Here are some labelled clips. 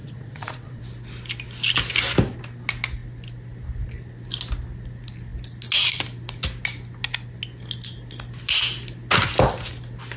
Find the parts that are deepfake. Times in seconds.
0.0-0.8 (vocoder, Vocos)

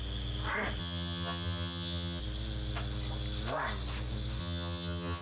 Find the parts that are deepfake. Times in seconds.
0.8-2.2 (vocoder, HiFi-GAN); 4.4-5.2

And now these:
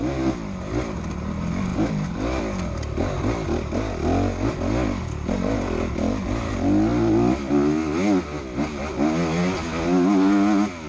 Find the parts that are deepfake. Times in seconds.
none